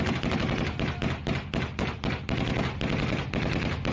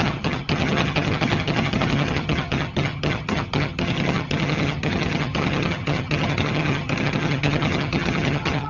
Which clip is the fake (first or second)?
second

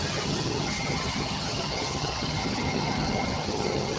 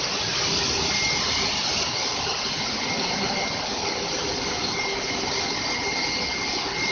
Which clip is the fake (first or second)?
first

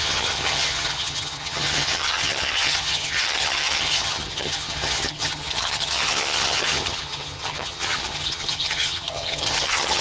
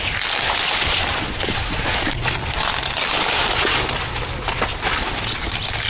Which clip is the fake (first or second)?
first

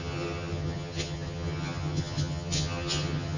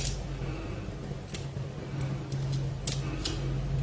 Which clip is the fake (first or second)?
first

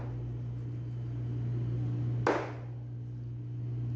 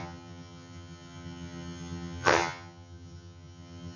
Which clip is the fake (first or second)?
second